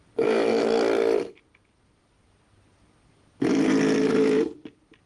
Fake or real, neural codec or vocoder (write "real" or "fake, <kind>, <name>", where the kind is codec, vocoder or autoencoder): real